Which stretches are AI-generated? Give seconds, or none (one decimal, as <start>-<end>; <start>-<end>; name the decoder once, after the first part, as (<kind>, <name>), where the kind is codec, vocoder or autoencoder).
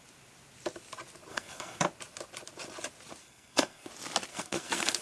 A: 1.3-1.8 (codec, SNAC); 3.2-3.9; 4.3-5.0